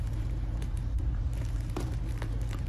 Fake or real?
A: fake